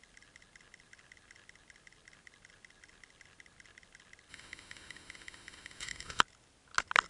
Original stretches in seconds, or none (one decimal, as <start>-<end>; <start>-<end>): 0.0-4.3; 6.2-7.1